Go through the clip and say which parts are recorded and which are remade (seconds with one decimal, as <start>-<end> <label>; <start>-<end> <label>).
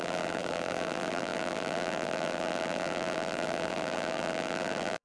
0.0-5.0 remade